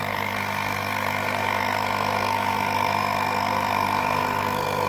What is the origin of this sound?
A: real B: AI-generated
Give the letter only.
B